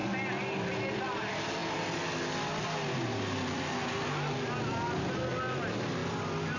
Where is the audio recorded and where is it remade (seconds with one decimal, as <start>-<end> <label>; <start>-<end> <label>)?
0.0-6.6 recorded